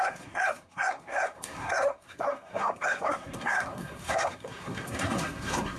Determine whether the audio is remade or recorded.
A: remade